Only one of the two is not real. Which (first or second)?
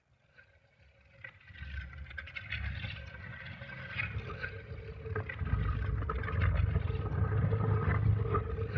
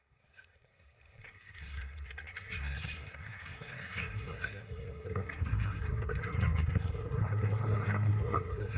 second